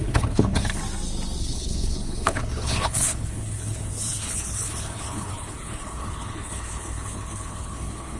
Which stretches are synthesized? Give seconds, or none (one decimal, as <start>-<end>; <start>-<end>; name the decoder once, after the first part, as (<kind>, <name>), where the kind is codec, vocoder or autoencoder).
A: 0.0-0.8 (codec, HILCodec); 1.4-8.2